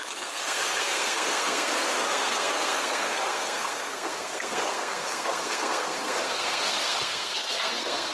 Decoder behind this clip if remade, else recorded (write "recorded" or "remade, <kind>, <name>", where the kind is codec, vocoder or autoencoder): remade, codec, SNAC